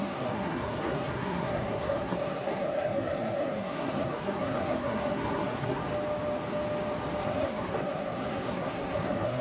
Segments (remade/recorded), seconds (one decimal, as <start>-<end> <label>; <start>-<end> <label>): 0.0-5.8 remade; 5.8-7.2 recorded; 7.2-9.4 remade